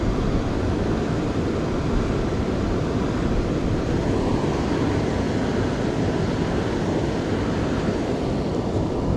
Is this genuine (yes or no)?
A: yes